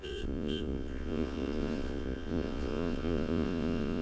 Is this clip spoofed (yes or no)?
yes